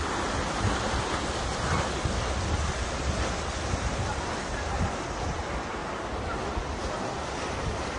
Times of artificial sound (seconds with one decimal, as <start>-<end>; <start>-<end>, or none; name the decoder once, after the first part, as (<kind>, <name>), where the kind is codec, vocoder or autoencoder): none